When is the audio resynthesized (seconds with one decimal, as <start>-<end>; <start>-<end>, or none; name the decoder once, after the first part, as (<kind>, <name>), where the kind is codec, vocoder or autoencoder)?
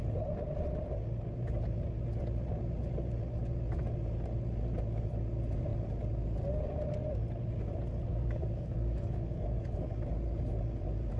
8.1-9.9 (codec, DAC)